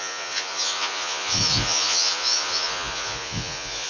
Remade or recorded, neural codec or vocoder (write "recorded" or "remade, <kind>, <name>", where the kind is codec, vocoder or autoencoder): remade, vocoder, Vocos